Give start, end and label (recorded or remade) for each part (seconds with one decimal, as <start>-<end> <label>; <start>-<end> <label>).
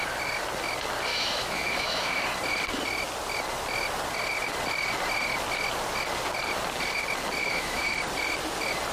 0.0-1.1 recorded; 1.1-2.2 remade; 2.2-7.4 recorded; 7.4-7.9 remade; 7.9-8.9 recorded